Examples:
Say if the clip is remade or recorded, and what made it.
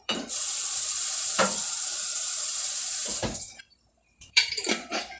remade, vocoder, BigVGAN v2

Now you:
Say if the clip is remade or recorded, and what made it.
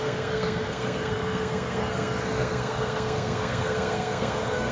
remade, codec, SNAC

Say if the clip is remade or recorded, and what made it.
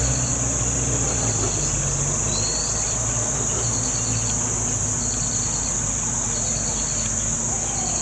recorded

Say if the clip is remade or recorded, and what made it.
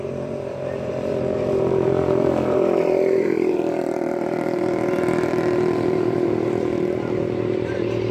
remade, vocoder, BigVGAN v2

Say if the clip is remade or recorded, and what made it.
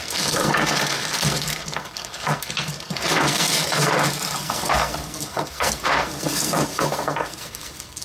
remade, codec, SNAC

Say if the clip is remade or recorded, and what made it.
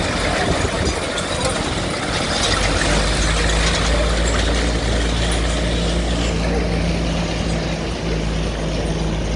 recorded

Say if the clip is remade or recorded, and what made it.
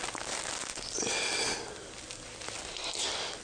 recorded